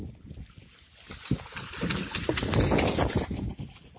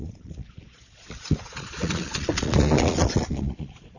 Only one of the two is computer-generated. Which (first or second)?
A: second